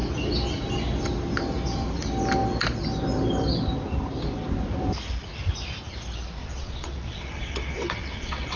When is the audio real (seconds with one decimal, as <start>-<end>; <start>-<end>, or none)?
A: 0.0-6.4